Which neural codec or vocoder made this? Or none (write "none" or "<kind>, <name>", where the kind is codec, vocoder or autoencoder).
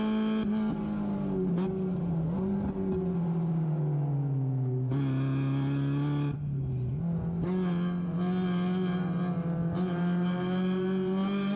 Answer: none